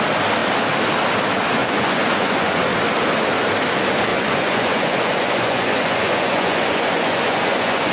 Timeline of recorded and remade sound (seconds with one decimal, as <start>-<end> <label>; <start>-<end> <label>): 0.0-1.6 recorded; 1.6-2.6 remade; 2.6-4.1 recorded; 4.1-7.9 remade